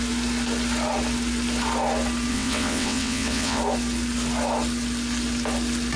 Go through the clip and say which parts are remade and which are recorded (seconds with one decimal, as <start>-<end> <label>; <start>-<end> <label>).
0.0-2.3 recorded; 2.3-3.6 remade; 3.6-6.0 recorded